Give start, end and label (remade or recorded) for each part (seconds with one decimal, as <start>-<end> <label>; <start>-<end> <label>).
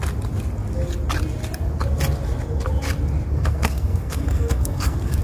0.0-3.3 recorded; 3.3-5.2 remade